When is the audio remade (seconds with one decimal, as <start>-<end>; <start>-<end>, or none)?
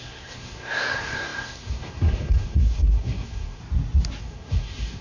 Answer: 0.0-3.6; 4.2-5.0